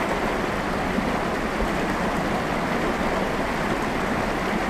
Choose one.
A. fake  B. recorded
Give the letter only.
B